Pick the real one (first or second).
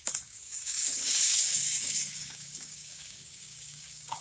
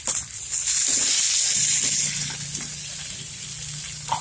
second